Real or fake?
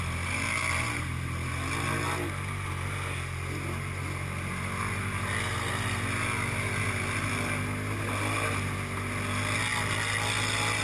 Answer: real